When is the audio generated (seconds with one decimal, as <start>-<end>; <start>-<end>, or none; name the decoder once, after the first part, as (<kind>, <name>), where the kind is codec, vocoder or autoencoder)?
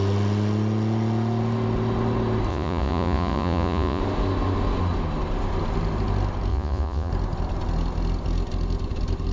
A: 2.5-4.0 (vocoder, Vocos); 6.5-7.1